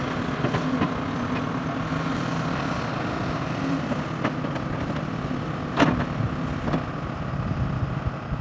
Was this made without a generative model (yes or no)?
yes